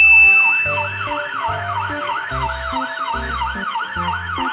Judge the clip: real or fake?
fake